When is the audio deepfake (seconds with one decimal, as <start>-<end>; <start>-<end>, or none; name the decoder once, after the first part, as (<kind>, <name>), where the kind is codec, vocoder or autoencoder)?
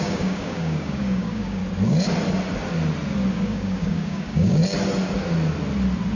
0.0-1.6 (codec, DAC); 3.3-4.6